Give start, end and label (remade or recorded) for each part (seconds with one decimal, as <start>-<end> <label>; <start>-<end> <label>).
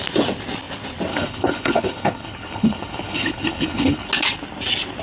0.0-1.1 recorded; 1.1-4.1 remade; 4.1-5.0 recorded